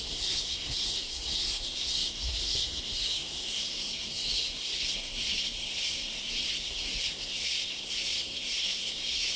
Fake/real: fake